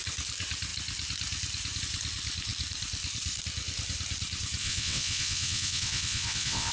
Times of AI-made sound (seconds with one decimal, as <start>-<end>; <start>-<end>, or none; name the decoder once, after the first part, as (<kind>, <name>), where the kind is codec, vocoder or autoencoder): 4.6-6.7 (vocoder, WaveNeXt)